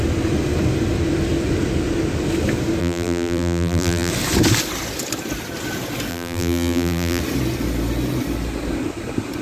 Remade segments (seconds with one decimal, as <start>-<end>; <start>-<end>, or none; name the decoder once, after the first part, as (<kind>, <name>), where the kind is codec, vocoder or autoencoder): 2.8-4.1 (vocoder, BigVGAN v2); 6.1-7.2